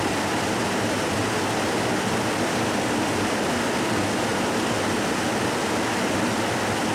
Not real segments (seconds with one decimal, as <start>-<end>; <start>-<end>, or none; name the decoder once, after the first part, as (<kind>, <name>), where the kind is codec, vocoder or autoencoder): none